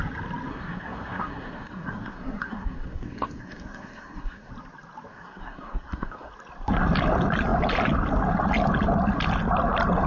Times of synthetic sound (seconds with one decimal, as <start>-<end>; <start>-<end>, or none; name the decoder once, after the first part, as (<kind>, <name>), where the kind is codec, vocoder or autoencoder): 0.5-4.5 (codec, SNAC); 5.1-6.3